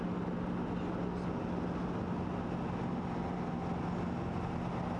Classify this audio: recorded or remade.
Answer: recorded